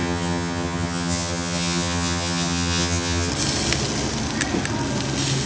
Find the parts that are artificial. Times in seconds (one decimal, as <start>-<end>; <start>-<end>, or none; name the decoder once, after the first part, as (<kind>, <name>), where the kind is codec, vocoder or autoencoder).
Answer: 0.0-3.3 (vocoder, HiFi-GAN)

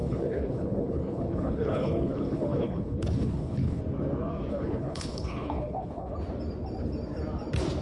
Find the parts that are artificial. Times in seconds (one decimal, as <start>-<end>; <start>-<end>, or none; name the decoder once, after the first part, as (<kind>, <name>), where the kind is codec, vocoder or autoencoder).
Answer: 0.0-3.8 (codec, HILCodec); 4.5-6.1